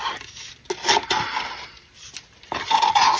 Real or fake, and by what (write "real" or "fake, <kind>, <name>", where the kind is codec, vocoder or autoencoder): real